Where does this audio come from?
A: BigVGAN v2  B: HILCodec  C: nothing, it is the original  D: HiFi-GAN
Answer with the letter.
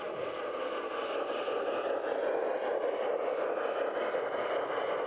C